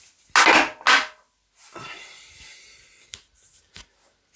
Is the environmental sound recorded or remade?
recorded